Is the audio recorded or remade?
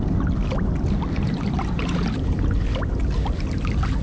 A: recorded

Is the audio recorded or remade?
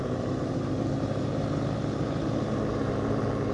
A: remade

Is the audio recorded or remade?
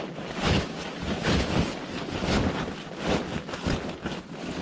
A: recorded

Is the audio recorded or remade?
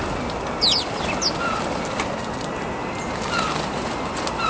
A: recorded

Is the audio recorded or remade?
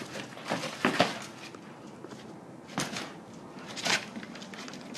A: recorded